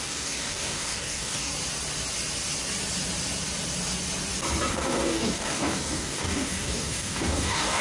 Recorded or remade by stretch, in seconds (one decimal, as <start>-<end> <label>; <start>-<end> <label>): 0.0-1.5 remade; 1.5-4.7 recorded; 4.7-7.8 remade